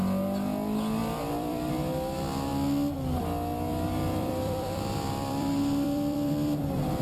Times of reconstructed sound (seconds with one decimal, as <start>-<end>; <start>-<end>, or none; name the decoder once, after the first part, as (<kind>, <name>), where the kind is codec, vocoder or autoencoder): 1.0-1.7 (vocoder, BigVGAN v2); 3.7-6.6